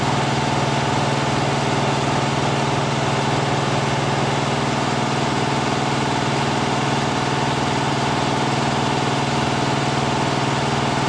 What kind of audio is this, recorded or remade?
recorded